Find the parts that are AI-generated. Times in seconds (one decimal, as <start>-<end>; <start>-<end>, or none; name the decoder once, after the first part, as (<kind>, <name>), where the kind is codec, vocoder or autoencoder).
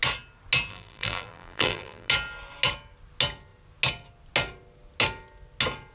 0.7-2.1 (vocoder, BigVGAN v2)